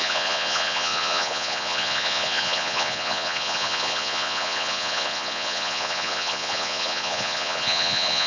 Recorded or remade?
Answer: remade